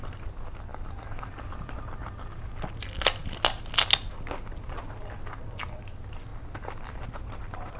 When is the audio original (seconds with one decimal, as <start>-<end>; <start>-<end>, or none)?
0.0-7.8